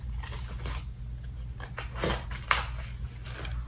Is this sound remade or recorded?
recorded